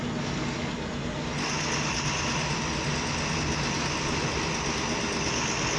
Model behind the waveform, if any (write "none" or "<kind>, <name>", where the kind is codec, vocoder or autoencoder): none